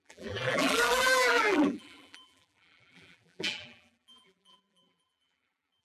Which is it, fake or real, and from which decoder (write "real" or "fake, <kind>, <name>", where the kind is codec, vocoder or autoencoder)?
fake, vocoder, BigVGAN v2